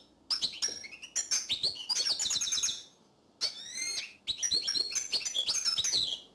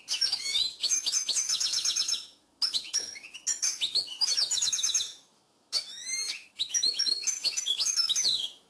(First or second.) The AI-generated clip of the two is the second